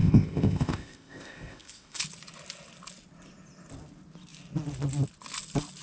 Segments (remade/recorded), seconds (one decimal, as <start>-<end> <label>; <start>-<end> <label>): 0.0-2.0 remade; 2.0-5.8 recorded